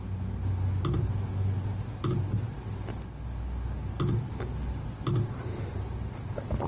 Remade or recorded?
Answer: recorded